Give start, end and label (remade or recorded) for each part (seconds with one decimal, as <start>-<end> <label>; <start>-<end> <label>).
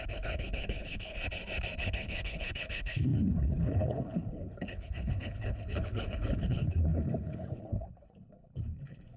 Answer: 0.0-1.2 remade; 1.2-1.8 recorded; 1.8-9.2 remade